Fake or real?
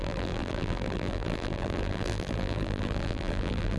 fake